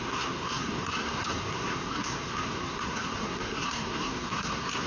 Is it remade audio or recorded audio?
remade